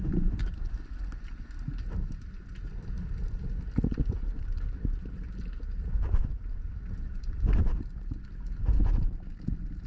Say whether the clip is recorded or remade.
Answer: recorded